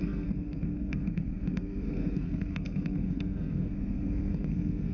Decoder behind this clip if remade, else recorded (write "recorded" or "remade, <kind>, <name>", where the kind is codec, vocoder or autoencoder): remade, codec, SNAC